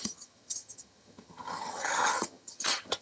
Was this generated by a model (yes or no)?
yes